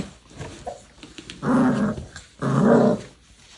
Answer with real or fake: real